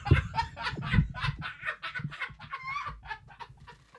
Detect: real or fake real